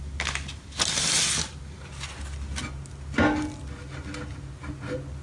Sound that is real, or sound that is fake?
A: real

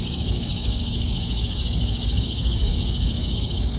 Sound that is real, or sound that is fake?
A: fake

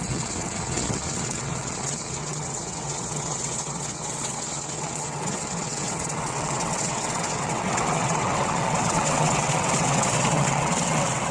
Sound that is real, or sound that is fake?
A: fake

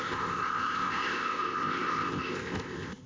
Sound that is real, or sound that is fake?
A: fake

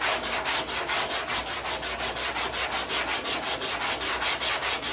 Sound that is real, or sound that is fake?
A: real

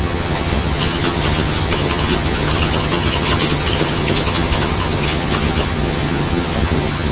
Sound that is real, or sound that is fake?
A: fake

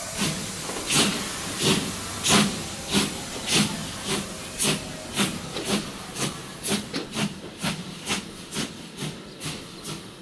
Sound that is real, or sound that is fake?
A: real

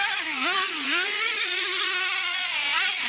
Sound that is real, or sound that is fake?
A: fake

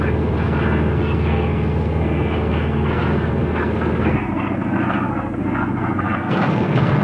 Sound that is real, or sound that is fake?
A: fake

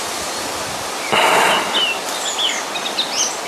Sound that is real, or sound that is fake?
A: real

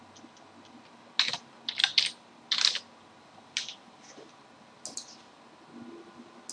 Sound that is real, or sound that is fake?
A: real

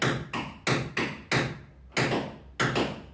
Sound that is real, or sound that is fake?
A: real